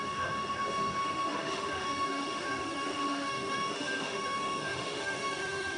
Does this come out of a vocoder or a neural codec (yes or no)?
yes